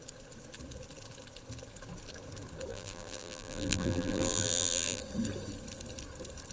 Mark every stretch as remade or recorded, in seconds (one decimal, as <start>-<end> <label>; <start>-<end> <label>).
0.0-2.7 recorded; 2.7-5.0 remade; 5.0-6.5 recorded